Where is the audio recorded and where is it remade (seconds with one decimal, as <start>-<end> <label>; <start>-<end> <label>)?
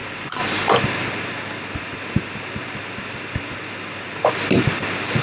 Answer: 0.0-5.2 recorded